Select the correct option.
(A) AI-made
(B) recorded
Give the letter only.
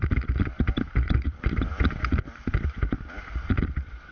A